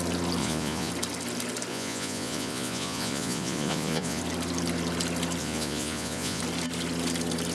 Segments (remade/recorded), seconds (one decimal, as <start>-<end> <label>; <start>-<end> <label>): 0.0-0.4 recorded; 0.4-0.9 remade; 0.9-1.7 recorded; 1.7-4.2 remade; 4.2-5.4 recorded; 5.4-6.4 remade; 6.4-7.5 recorded